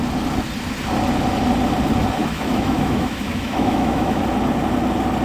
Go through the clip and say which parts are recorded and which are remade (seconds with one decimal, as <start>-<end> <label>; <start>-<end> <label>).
0.0-2.2 recorded; 2.2-4.2 remade; 4.2-5.2 recorded